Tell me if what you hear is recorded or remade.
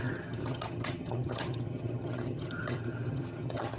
remade